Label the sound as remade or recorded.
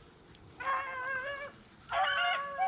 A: recorded